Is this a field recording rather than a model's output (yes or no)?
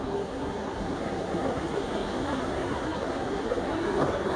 no